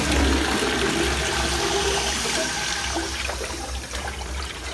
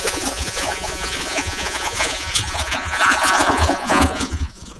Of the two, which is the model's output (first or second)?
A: second